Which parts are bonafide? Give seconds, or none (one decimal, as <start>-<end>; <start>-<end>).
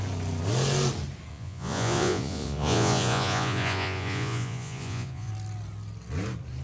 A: 0.0-1.3; 5.3-6.6